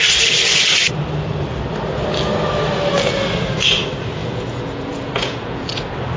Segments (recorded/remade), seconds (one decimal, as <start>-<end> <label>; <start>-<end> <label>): 0.0-4.2 recorded; 4.2-5.8 remade; 5.8-6.2 recorded